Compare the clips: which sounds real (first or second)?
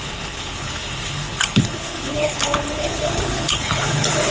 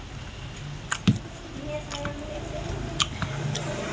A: second